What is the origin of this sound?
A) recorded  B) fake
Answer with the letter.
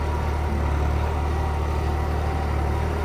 A